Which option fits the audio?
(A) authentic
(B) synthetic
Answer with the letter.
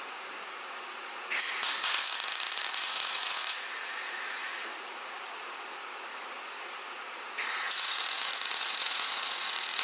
B